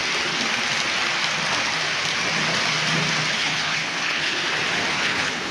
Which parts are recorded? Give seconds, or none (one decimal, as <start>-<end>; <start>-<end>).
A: 0.0-3.3; 4.4-4.9